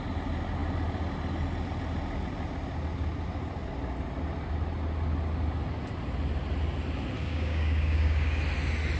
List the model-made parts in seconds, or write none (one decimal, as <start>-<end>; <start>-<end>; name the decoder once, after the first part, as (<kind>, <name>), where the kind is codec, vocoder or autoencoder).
7.2-8.4 (codec, DAC)